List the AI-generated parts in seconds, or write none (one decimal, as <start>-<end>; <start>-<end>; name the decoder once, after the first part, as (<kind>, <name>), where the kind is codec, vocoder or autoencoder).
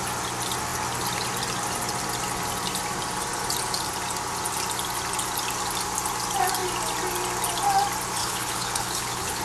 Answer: 8.2-9.4 (codec, HILCodec)